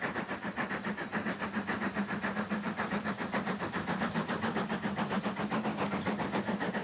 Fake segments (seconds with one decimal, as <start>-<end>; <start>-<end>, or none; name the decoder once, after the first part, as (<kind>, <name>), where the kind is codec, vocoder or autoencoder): none